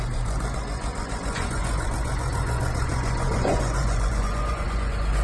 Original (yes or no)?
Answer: no